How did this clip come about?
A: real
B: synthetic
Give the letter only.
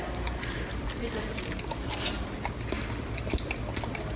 A